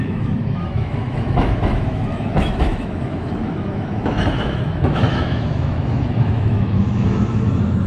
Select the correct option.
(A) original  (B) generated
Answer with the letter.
B